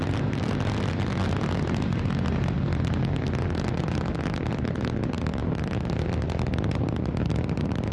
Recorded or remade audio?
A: recorded